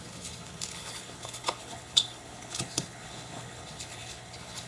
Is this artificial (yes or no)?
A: yes